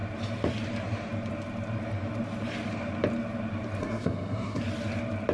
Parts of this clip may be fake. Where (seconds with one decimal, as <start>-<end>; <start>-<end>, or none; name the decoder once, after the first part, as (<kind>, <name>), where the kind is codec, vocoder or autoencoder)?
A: 3.8-4.6 (codec, SNAC)